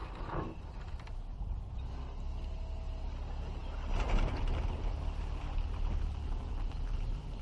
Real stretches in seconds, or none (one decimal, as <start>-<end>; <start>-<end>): 0.0-7.4